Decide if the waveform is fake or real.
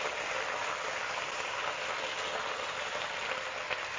real